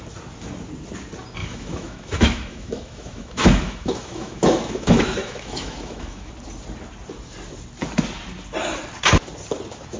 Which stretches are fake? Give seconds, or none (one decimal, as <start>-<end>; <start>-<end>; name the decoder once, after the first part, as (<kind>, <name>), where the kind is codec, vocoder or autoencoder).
1.4-6.3 (autoencoder, DAC-VAE)